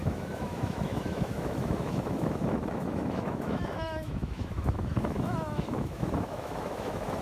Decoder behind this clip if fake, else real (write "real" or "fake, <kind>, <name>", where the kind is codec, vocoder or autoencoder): fake, autoencoder, DAC-VAE